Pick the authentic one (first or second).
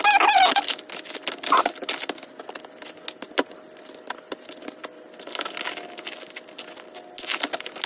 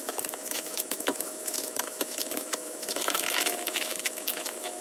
first